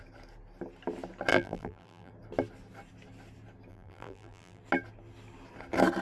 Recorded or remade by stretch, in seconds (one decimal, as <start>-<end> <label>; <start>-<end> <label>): 0.0-1.3 recorded; 1.3-2.1 remade; 2.1-3.7 recorded; 3.7-4.6 remade; 4.6-6.0 recorded